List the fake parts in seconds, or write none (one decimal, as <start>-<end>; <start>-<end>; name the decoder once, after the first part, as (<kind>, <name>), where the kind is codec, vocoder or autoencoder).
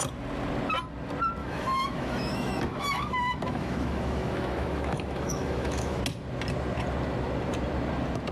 1.4-6.0 (autoencoder, DAC-VAE)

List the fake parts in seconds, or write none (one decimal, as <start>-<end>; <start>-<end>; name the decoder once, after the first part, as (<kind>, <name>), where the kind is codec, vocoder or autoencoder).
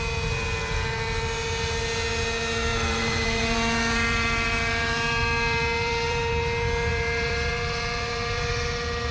2.7-6.3 (vocoder, BigVGAN v2); 6.9-8.5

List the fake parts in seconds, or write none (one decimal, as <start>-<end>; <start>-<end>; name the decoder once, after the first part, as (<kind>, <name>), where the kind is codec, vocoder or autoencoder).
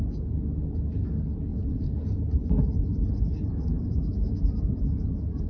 1.5-4.8 (vocoder, BigVGAN v2)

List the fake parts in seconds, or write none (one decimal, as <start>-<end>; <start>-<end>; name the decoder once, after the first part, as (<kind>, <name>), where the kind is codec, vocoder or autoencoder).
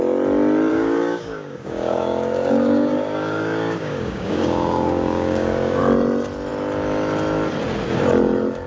0.7-5.8 (codec, DAC)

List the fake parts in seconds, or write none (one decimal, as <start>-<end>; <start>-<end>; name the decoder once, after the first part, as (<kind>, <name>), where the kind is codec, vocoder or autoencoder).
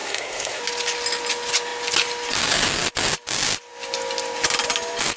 0.0-0.6 (codec, SNAC)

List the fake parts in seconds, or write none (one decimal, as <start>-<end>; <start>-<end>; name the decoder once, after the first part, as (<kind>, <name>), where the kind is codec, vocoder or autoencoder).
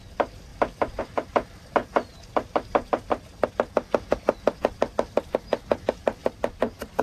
0.0-0.5 (vocoder, BigVGAN v2); 1.0-1.8; 5.2-7.0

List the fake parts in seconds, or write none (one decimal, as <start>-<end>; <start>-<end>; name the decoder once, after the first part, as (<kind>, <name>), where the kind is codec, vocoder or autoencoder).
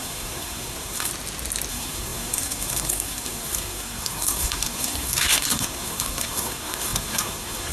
0.0-1.1 (codec, SNAC); 1.7-7.7